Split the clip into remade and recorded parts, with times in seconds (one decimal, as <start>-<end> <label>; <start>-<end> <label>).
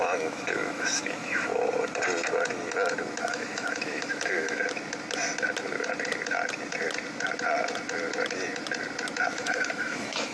0.0-1.5 remade; 1.5-3.2 recorded; 3.2-4.6 remade; 4.6-9.3 recorded; 9.3-10.3 remade